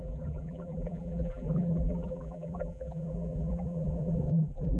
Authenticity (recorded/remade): remade